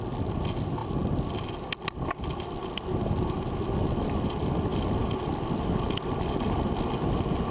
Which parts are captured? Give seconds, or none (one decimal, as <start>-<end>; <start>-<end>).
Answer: 0.0-0.8; 1.3-2.3; 4.3-7.5